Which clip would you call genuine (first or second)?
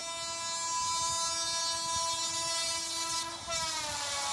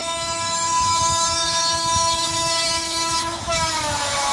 first